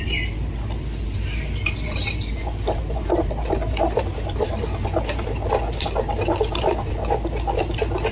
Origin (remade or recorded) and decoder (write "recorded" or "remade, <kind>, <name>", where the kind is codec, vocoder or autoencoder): recorded